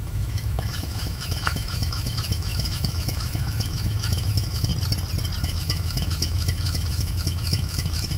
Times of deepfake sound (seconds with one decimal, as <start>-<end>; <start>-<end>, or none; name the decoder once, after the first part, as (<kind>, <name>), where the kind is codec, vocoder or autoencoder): 0.0-4.7 (autoencoder, DAC-VAE); 5.4-8.2